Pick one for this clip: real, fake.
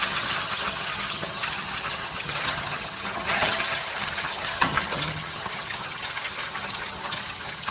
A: fake